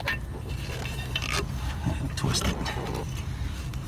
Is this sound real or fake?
real